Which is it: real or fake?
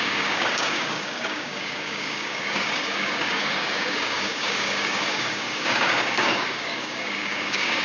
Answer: fake